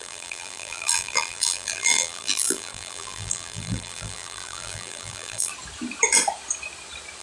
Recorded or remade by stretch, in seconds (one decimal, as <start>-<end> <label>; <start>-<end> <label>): 0.0-5.5 remade; 5.5-7.2 recorded